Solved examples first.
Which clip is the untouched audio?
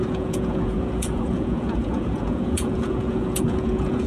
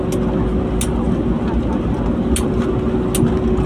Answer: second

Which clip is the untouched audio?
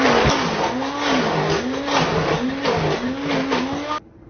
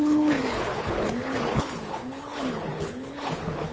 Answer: first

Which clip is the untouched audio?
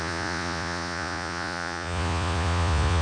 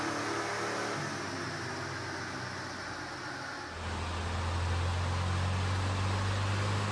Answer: second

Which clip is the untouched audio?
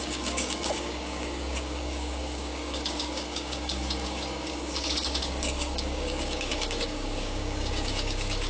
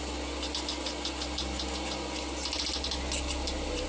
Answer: second